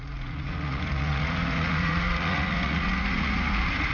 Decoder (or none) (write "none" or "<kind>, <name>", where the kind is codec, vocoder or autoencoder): vocoder, Vocos